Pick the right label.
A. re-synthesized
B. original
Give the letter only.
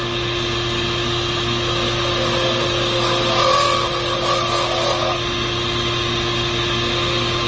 B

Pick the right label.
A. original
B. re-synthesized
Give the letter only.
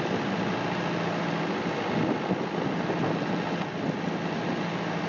A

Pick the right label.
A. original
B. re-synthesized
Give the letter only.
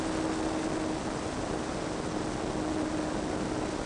A